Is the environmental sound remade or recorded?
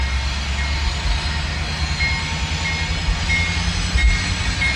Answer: recorded